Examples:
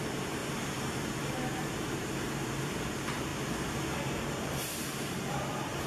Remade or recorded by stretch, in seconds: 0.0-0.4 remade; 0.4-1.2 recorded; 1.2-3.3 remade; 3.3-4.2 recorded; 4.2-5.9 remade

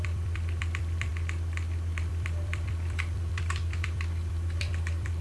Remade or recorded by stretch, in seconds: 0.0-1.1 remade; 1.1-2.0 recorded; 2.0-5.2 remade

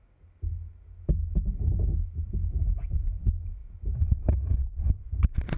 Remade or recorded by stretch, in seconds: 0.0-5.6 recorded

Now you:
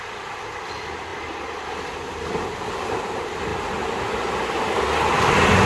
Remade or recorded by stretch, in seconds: 0.0-5.7 recorded

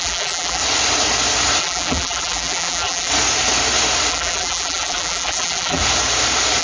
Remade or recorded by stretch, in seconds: 0.0-0.6 remade; 0.6-1.6 recorded; 1.6-3.1 remade; 3.1-4.1 recorded; 4.1-5.8 remade; 5.8-6.6 recorded

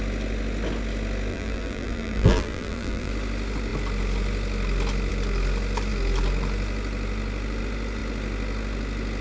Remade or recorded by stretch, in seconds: 0.0-1.3 recorded; 1.3-3.1 remade; 3.1-9.2 recorded